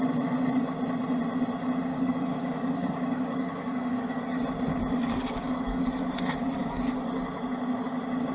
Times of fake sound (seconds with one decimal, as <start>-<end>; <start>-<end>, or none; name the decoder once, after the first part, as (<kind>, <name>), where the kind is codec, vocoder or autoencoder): 1.9-4.2 (codec, DAC); 4.7-6.6